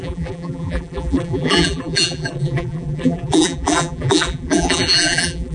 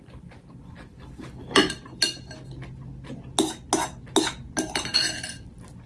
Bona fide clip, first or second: second